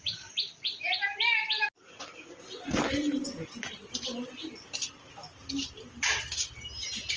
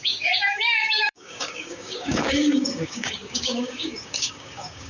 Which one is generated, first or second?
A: second